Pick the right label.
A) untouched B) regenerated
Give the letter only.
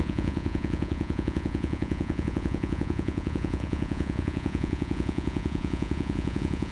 B